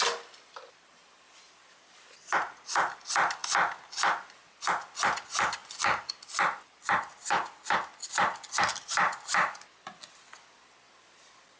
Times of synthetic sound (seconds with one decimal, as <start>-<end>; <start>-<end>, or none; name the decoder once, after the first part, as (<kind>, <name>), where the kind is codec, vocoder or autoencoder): none